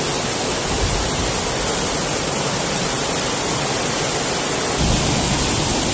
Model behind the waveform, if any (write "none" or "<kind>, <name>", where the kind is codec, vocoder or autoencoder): none